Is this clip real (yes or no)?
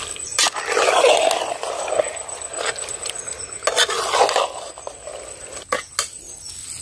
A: yes